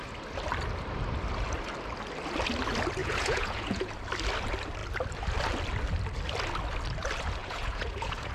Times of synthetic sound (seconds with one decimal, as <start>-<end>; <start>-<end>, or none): 3.0-3.9; 7.4-8.3